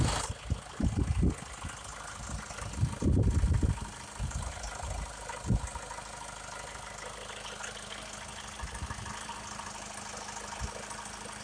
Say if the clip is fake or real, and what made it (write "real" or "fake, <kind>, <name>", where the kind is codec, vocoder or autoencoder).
real